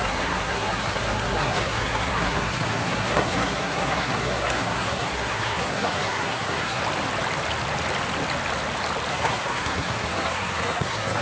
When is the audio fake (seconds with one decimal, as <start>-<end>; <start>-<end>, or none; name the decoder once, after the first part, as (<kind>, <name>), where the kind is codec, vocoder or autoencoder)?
0.0-6.8 (codec, SNAC); 9.1-11.2